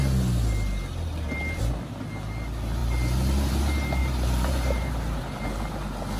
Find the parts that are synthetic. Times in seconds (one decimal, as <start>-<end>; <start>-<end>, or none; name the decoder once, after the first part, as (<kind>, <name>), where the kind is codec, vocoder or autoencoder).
2.8-3.6 (vocoder, BigVGAN v2); 4.0-5.2